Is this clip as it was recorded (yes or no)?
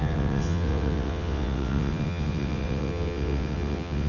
no